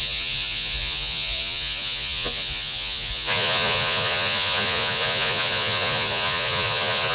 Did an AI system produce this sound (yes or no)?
yes